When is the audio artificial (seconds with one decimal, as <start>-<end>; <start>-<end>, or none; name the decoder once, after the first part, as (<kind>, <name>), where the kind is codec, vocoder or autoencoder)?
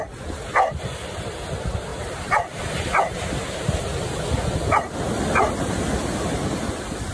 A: 1.9-3.5 (vocoder, BigVGAN v2)